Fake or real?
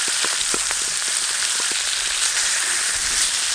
real